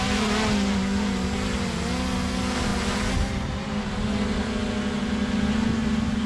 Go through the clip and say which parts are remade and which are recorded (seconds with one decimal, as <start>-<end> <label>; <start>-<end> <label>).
0.0-6.3 recorded